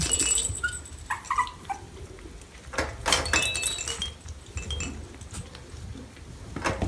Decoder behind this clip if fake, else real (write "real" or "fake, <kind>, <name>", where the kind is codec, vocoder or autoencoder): real